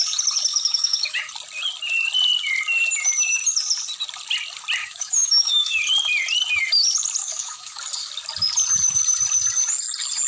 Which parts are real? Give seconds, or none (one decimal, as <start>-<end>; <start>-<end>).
0.0-0.5; 1.3-4.8; 5.8-7.2; 7.8-10.3